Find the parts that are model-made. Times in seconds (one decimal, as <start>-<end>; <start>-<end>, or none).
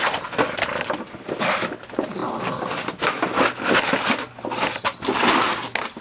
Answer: none